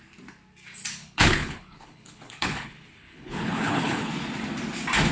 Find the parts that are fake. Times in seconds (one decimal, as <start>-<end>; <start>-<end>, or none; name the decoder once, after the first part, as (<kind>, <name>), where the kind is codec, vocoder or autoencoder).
1.0-4.1 (codec, HILCodec)